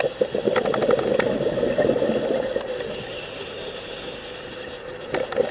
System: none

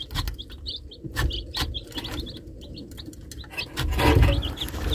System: none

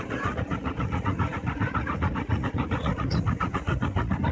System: vocoder, Vocos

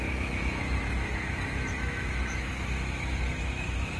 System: autoencoder, DAC-VAE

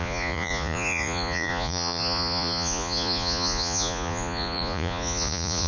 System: vocoder, Vocos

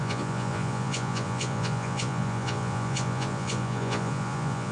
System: vocoder, Vocos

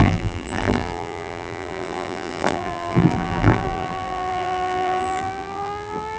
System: vocoder, BigVGAN v2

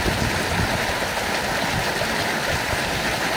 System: none